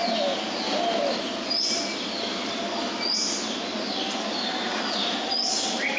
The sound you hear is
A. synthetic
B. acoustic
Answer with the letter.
B